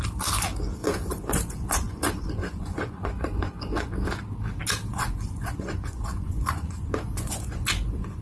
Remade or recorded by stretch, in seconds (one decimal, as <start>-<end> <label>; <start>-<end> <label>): 0.0-0.8 recorded; 0.8-3.9 remade; 3.9-4.9 recorded; 4.9-8.2 remade